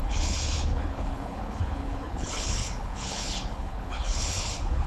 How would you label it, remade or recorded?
remade